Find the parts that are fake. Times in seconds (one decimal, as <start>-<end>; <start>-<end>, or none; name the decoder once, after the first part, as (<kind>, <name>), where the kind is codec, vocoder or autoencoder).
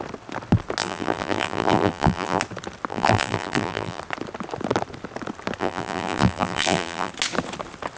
0.8-2.4 (vocoder, BigVGAN v2); 2.9-4.0; 5.6-7.1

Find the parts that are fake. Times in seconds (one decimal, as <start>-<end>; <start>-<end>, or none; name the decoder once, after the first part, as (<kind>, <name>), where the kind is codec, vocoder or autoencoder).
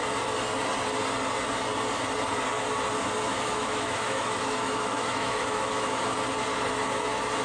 3.3-6.0 (autoencoder, DAC-VAE)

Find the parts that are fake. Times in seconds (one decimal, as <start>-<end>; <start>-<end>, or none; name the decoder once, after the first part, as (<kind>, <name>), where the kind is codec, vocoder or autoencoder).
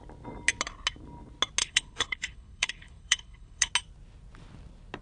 1.6-3.7 (codec, HILCodec)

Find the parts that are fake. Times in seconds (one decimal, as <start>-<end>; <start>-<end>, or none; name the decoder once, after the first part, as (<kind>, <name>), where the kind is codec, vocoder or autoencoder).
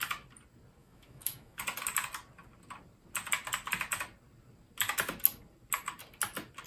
0.8-1.6 (autoencoder, DAC-VAE)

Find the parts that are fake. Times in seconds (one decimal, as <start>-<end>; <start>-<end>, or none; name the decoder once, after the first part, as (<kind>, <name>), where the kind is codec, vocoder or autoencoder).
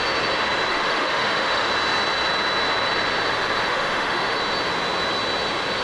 0.7-1.7 (autoencoder, DAC-VAE); 3.7-4.4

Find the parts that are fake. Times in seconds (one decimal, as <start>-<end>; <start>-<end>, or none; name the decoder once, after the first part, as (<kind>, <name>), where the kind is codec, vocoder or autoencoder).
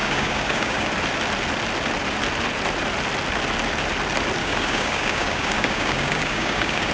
0.0-0.9 (codec, DAC); 4.4-6.9